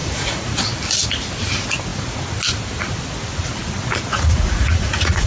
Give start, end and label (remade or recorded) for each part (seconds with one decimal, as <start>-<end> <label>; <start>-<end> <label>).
0.0-0.6 remade; 0.6-4.1 recorded; 4.1-5.3 remade